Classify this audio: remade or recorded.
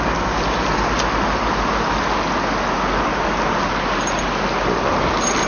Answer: recorded